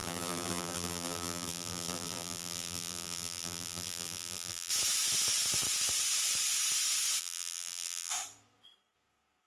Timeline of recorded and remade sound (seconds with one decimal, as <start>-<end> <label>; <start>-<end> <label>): 0.0-4.7 remade; 4.7-7.2 recorded; 7.2-8.1 remade; 8.1-9.5 recorded